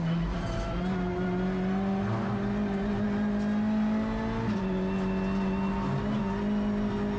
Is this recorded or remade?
recorded